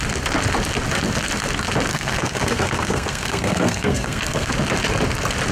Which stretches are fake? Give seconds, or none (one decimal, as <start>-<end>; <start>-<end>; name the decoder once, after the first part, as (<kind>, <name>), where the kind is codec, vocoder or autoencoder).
1.9-4.5 (codec, SNAC)